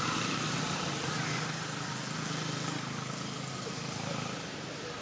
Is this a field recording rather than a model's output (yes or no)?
yes